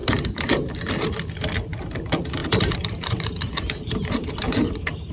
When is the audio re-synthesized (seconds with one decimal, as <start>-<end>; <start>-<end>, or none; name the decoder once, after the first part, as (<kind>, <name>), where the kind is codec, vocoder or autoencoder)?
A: 0.0-0.9 (vocoder, BigVGAN v2); 2.4-5.1